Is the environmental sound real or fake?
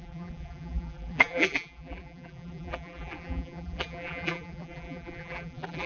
fake